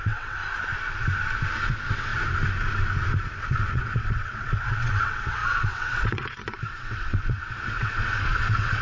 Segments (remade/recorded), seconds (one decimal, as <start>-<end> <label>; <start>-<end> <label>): 0.0-0.4 remade; 0.4-1.7 recorded; 1.7-2.1 remade; 2.1-3.4 recorded; 3.4-8.8 remade

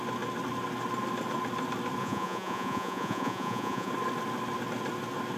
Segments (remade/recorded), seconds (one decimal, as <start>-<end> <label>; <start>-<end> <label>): 0.0-2.0 recorded; 2.0-3.9 remade; 3.9-5.4 recorded

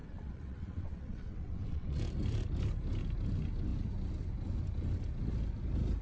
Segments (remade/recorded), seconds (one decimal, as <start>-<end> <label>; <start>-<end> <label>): 0.0-2.0 remade; 2.0-6.0 recorded

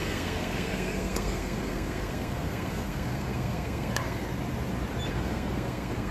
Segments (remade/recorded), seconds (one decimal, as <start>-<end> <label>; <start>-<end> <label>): 0.0-4.2 remade; 4.2-5.1 recorded; 5.1-6.1 remade